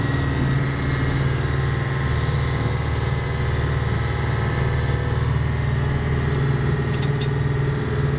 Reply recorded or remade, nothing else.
recorded